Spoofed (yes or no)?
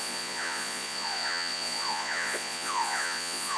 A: yes